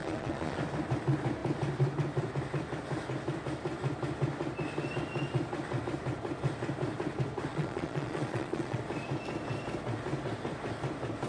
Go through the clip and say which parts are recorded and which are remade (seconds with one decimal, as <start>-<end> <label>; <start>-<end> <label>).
0.0-0.6 remade; 0.6-7.5 recorded; 7.5-8.8 remade; 8.8-11.3 recorded